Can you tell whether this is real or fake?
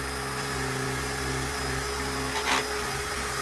real